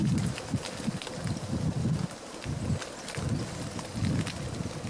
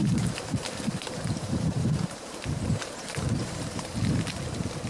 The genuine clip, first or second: first